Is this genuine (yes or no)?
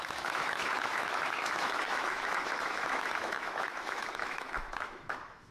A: no